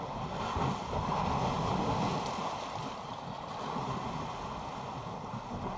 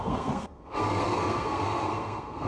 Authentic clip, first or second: first